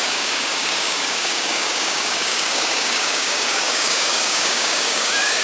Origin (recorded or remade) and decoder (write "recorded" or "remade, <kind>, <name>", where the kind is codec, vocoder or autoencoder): remade, codec, DAC